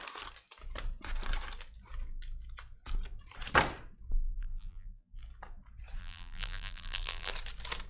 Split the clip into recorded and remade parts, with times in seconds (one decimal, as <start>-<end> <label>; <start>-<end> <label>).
0.0-4.3 recorded; 4.3-5.2 remade; 5.2-6.0 recorded; 6.0-7.3 remade; 7.3-7.9 recorded